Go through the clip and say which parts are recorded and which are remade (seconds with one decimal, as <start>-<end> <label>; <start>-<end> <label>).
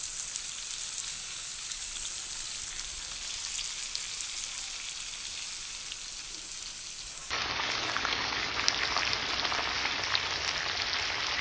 0.0-1.1 recorded; 1.1-1.9 remade; 1.9-7.2 recorded; 7.2-8.5 remade; 8.5-11.4 recorded